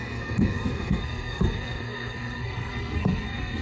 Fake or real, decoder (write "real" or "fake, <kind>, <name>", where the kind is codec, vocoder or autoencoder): fake, codec, SNAC